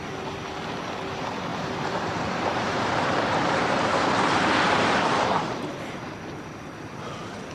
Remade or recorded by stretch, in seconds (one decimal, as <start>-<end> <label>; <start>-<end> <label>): 0.0-1.5 recorded; 1.5-6.0 remade; 6.0-7.5 recorded